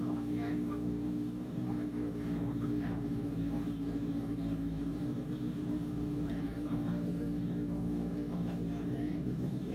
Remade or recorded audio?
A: remade